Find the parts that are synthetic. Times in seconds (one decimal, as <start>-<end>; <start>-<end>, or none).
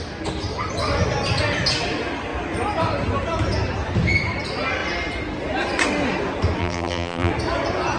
6.6-7.3